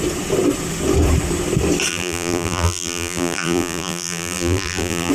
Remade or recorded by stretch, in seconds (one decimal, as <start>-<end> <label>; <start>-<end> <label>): 0.0-1.9 recorded; 1.9-5.1 remade